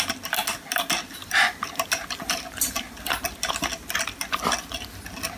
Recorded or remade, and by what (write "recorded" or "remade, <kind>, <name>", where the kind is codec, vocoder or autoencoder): recorded